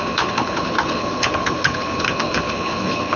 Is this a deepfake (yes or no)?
yes